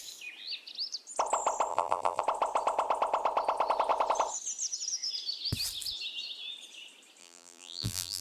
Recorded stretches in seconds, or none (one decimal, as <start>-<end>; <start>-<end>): 0.0-1.7; 2.2-7.2

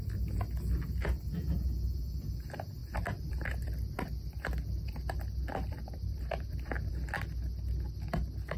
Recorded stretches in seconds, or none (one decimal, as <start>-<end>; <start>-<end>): 0.0-2.8; 6.9-8.6

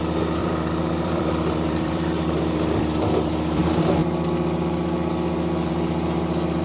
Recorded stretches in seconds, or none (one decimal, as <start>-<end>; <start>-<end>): 0.0-0.4; 3.6-6.6